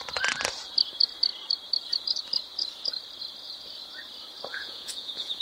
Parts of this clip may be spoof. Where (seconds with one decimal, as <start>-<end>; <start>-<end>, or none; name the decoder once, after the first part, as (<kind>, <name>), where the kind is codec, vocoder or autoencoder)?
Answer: 4.5-5.4 (vocoder, Vocos)